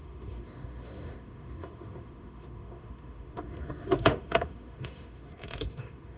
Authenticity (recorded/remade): remade